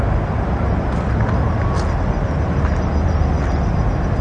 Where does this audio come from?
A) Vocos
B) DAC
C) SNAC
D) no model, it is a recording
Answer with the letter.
D